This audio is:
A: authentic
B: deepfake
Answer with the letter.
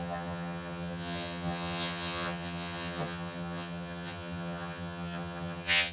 B